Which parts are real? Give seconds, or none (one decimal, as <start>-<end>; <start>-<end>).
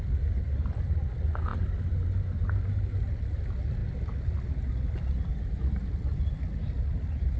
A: 0.0-7.4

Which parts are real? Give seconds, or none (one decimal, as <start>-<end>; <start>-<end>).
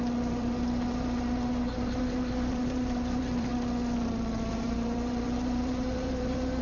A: 3.5-4.5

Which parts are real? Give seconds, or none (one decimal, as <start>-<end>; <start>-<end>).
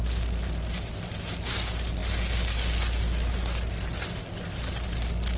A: 0.0-5.4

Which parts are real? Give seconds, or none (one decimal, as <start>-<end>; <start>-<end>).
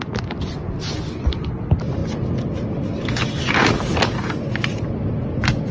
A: 0.0-5.7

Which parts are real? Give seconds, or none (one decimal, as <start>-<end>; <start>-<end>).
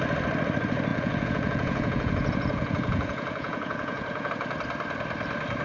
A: 0.0-0.9; 4.3-5.6